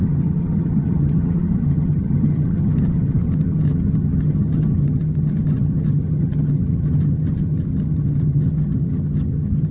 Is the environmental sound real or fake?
fake